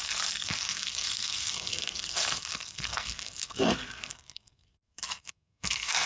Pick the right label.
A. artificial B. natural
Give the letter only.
A